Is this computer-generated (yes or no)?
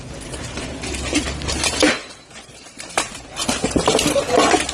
no